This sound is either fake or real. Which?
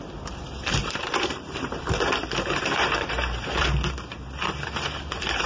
fake